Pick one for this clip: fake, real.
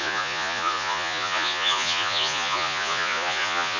fake